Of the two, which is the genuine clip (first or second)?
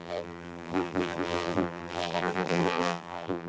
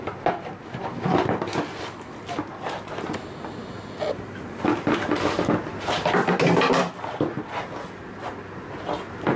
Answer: second